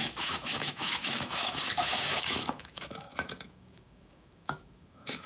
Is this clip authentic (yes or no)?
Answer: no